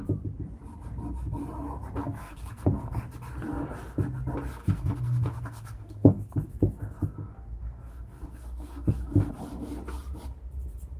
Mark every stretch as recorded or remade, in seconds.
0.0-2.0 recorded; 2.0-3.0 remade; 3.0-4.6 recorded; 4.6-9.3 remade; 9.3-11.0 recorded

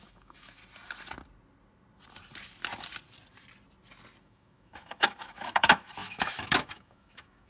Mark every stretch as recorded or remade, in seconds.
0.0-0.6 remade; 0.6-4.2 recorded; 4.2-7.5 remade

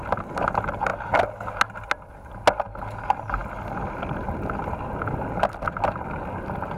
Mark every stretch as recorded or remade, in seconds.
0.0-6.8 recorded